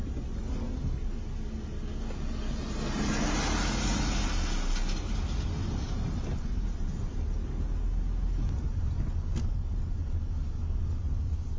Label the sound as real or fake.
real